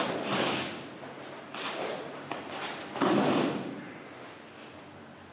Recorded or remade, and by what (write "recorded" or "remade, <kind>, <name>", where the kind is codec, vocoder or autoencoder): recorded